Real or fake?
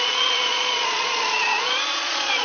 fake